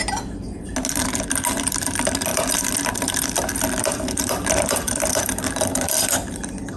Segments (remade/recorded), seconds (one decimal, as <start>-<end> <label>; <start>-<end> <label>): 0.0-2.3 recorded; 2.3-6.8 remade